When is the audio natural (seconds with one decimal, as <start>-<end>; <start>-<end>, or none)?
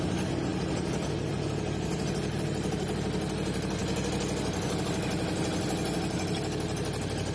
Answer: 0.0-7.3